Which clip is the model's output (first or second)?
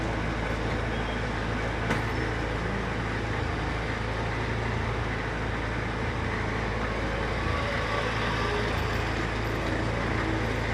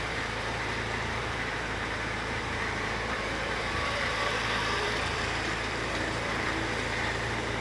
second